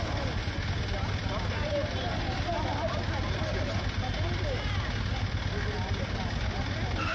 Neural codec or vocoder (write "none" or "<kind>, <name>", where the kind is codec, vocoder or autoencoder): none